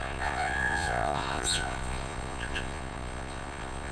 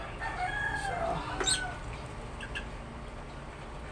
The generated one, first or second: first